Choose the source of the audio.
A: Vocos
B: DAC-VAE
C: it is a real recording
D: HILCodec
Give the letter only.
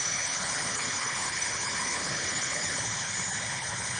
D